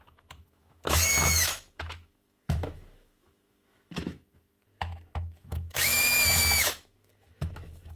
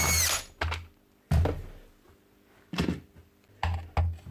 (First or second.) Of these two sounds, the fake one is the first